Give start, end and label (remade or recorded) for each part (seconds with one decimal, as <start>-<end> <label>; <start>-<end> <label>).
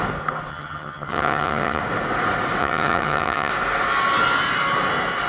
0.0-0.5 recorded; 0.5-1.8 remade; 1.8-2.6 recorded; 2.6-3.5 remade; 3.5-5.3 recorded